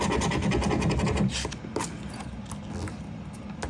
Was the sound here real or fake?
real